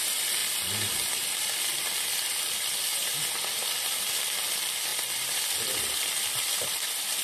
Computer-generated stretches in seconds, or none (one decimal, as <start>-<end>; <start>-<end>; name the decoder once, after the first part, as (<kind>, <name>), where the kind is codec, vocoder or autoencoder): 0.0-3.0 (vocoder, BigVGAN v2); 4.5-7.2